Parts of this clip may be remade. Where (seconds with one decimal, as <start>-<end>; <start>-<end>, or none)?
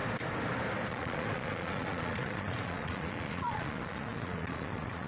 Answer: 0.9-5.1